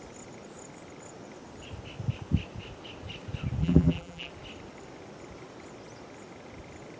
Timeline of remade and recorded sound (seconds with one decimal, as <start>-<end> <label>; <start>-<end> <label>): 0.0-3.6 recorded; 3.6-4.3 remade; 4.3-7.0 recorded